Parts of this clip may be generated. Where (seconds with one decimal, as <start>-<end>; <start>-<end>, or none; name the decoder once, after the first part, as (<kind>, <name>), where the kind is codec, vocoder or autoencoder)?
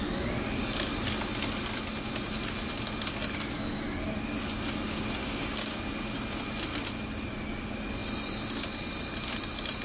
5.2-5.8 (codec, DAC)